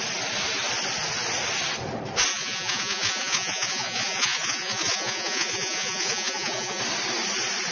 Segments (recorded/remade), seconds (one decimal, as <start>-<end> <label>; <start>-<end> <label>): 0.0-2.3 recorded; 2.3-6.8 remade; 6.8-7.7 recorded